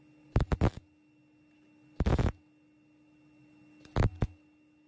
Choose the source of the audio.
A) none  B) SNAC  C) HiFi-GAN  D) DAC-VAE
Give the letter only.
A